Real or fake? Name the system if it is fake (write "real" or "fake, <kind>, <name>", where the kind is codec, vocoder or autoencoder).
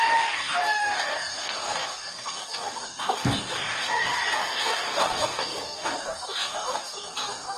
fake, codec, DAC